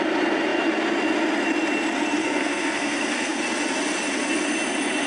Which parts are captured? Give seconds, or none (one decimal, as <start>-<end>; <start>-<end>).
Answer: 0.0-2.2; 3.4-5.1